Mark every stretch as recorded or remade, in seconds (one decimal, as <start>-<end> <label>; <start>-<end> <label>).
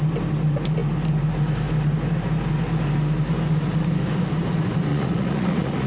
0.0-4.9 recorded; 4.9-5.9 remade